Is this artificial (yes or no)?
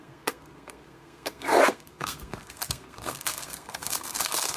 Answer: yes